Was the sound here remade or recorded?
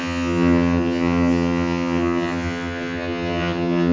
remade